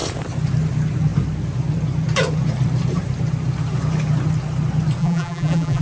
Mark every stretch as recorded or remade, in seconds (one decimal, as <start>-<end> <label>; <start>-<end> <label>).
0.0-5.0 recorded; 5.0-5.8 remade